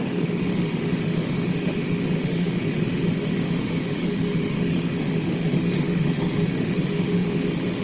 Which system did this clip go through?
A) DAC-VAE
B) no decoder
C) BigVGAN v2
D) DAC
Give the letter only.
A